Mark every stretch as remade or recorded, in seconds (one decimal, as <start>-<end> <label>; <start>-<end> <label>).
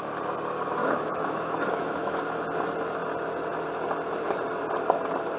0.0-0.8 recorded; 0.8-2.2 remade; 2.2-5.4 recorded